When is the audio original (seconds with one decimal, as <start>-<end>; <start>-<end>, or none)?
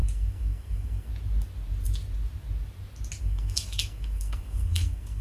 1.1-3.2